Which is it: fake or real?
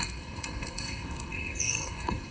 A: fake